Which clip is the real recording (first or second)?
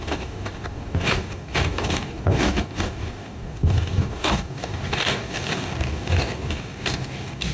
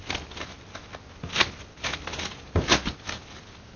second